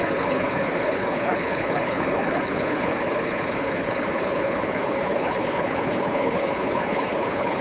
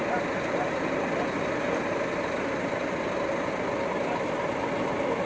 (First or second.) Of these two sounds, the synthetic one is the first